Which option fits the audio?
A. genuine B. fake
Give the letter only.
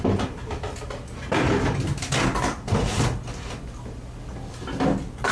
B